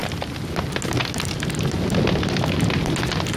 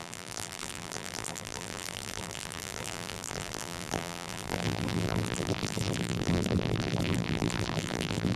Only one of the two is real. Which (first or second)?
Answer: first